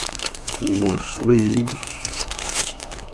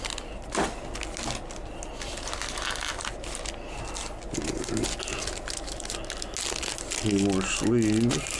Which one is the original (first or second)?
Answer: second